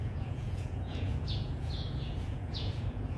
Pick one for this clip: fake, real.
fake